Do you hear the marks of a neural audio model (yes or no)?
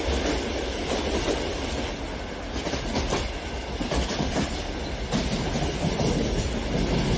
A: no